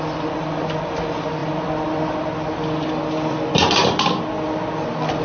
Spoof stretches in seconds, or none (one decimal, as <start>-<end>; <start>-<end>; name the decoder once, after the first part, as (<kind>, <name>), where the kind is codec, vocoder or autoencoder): none